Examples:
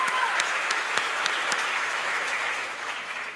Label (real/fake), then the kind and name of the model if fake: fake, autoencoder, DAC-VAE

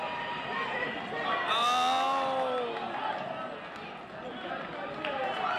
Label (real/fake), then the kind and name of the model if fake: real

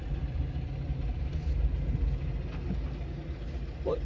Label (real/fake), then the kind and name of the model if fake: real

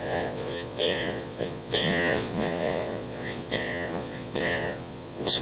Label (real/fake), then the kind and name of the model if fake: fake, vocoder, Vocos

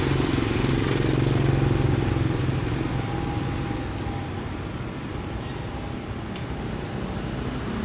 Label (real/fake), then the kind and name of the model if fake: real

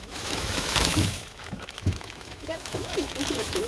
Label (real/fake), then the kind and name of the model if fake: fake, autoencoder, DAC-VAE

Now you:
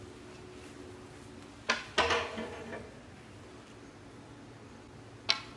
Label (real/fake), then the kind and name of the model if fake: real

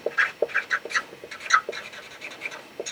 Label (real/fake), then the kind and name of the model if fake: real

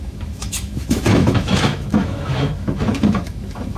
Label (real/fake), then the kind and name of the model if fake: fake, autoencoder, DAC-VAE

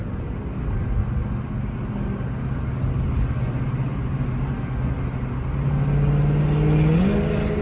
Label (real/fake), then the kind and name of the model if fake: real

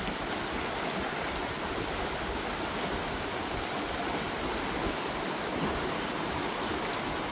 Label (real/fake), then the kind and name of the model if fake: real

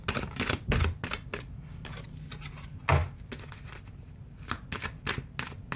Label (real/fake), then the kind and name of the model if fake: real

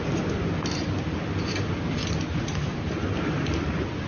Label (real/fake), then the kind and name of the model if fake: real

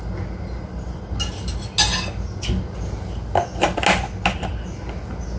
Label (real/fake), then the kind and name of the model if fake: real